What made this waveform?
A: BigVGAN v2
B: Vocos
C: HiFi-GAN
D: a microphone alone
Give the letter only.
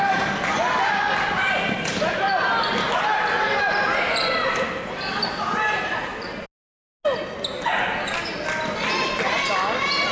D